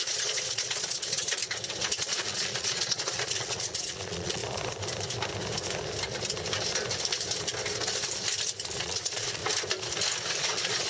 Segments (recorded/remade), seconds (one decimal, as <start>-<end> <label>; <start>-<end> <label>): 0.0-1.4 remade; 1.4-2.0 recorded; 2.0-4.4 remade; 4.4-8.7 recorded; 8.7-9.4 remade; 9.4-10.4 recorded; 10.4-10.9 remade